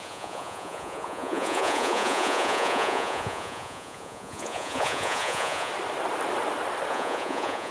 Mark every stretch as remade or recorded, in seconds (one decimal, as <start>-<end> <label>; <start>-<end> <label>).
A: 0.0-5.7 remade; 5.7-6.9 recorded; 6.9-7.7 remade